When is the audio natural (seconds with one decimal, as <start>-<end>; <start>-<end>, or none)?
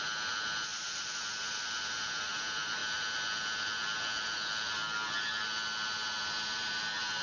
0.0-7.2